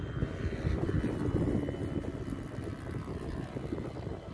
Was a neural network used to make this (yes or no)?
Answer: no